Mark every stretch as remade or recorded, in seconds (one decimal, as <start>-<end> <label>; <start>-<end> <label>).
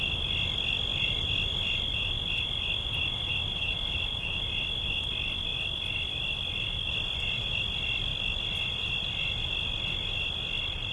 0.0-5.5 recorded; 5.5-7.5 remade; 7.5-8.1 recorded; 8.1-8.8 remade; 8.8-10.9 recorded